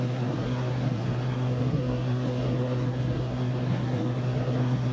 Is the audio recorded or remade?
remade